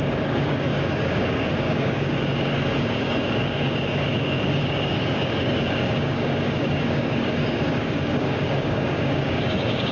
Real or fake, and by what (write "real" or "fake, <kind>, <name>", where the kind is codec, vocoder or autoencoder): fake, codec, DAC